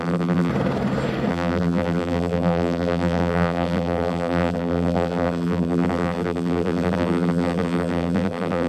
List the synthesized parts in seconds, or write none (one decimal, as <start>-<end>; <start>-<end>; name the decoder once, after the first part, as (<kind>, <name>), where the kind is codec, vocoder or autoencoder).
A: 0.0-0.5 (vocoder, BigVGAN v2); 1.3-8.7